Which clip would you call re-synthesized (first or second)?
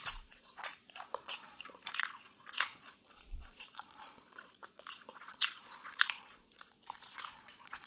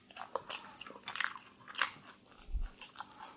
first